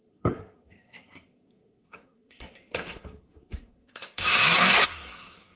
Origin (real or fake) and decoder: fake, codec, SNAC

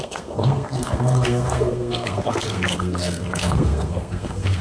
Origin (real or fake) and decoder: fake, codec, SNAC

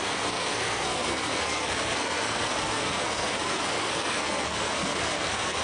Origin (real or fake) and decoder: fake, codec, SNAC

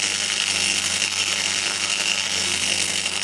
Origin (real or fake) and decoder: fake, codec, SNAC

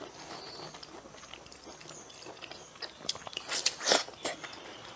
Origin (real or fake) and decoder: real